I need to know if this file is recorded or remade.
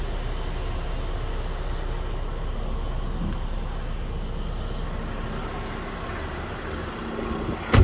recorded